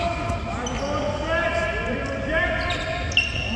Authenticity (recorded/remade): recorded